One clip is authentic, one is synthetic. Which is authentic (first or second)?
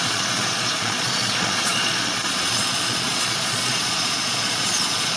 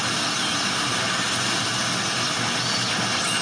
second